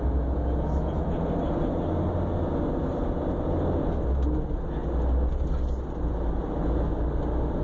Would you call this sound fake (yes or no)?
no